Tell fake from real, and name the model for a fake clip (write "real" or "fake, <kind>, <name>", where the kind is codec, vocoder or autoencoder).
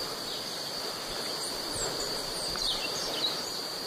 fake, vocoder, BigVGAN v2